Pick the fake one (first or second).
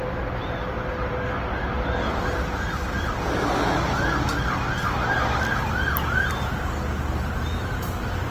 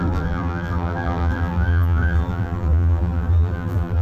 second